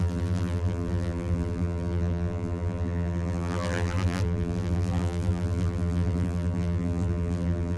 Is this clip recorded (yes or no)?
no